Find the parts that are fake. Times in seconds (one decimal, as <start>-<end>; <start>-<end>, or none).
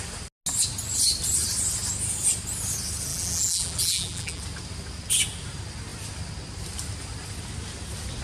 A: 3.1-4.4